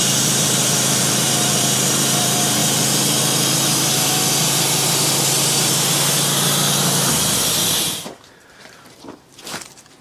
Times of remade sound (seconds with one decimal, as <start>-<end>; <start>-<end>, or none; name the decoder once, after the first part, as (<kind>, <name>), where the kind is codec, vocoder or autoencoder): 0.0-2.6 (vocoder, BigVGAN v2); 7.8-10.0